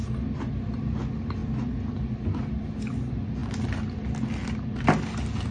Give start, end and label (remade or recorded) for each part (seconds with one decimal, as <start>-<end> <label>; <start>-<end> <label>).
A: 0.0-5.5 recorded